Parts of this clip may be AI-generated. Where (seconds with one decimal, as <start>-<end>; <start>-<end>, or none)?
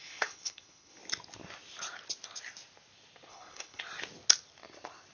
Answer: 0.0-1.0; 3.3-3.8